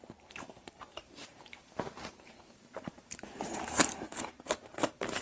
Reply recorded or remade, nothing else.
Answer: remade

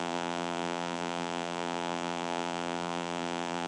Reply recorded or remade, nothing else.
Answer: remade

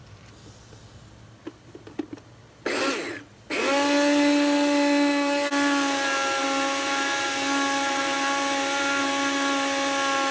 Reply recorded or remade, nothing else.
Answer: recorded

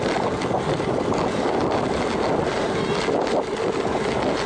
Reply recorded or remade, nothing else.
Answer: recorded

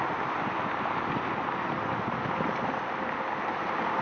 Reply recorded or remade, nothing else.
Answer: recorded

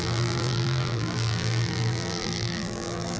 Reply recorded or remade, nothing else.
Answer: remade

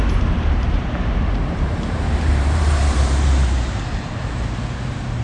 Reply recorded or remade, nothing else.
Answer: remade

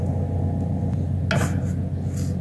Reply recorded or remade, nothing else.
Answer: recorded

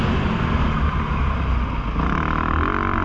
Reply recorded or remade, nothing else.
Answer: recorded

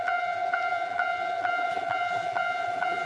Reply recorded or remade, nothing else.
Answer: remade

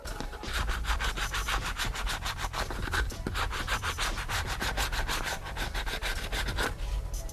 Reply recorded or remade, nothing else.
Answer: remade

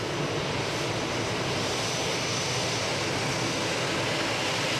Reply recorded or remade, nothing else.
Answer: recorded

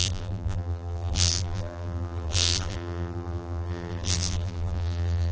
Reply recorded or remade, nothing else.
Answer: remade